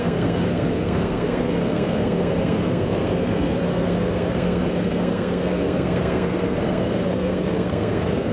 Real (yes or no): no